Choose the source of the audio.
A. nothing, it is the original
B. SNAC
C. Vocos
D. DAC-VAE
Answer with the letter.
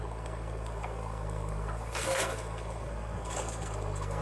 B